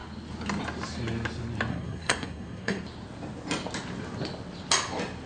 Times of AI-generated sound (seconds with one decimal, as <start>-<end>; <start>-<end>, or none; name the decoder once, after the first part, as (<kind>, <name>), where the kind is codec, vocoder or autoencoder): 1.7-2.8 (codec, SNAC)